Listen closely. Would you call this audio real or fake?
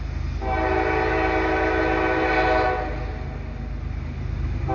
real